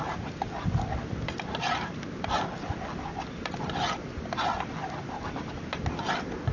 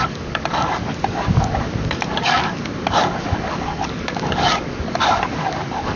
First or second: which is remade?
second